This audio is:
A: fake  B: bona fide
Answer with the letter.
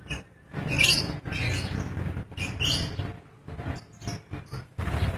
B